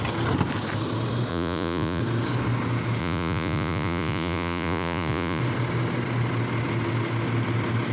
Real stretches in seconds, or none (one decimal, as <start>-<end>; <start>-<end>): 0.0-1.3; 2.0-3.0; 5.4-7.9